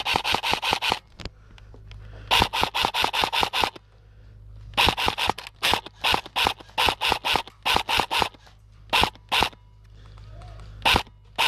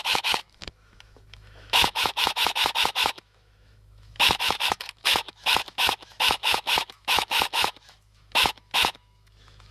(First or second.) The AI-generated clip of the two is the second